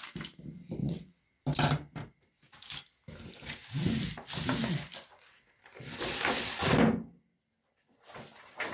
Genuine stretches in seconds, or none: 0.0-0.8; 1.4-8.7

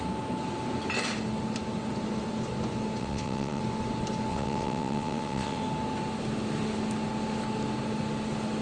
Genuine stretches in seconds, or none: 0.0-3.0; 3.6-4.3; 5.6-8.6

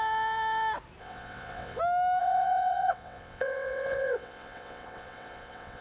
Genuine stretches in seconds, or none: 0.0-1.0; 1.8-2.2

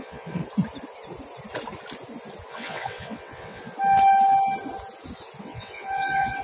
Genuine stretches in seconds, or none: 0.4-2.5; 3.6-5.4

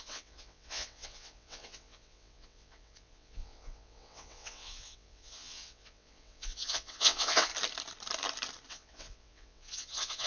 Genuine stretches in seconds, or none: 7.5-8.7

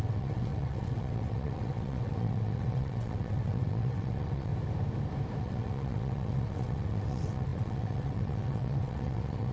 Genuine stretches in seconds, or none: 4.5-5.4

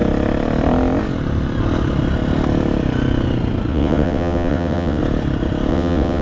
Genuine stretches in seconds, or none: 0.0-3.7; 5.0-5.7